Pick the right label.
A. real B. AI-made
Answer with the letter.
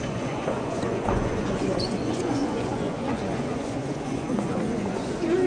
B